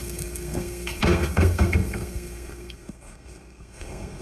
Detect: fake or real fake